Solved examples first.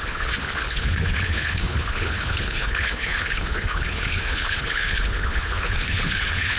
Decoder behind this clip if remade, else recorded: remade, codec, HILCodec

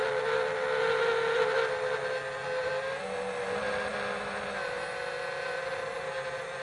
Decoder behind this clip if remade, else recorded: recorded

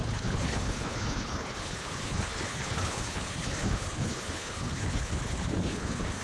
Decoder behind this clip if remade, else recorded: remade, codec, HILCodec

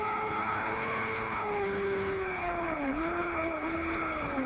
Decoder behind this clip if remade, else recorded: remade, codec, HILCodec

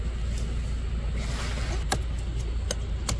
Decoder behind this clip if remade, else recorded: recorded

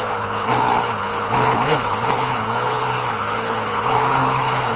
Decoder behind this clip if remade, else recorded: remade, codec, HILCodec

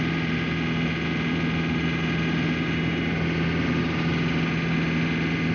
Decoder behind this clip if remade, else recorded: recorded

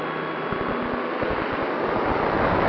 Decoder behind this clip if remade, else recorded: recorded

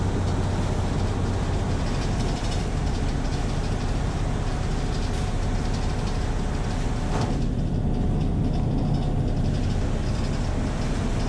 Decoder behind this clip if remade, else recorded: recorded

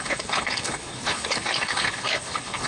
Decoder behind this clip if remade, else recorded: remade, codec, HILCodec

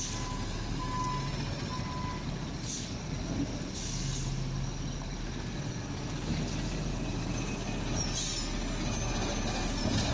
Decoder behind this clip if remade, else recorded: recorded